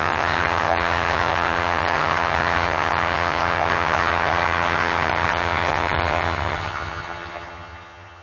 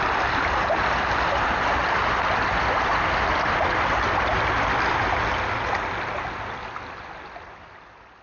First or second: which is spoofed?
first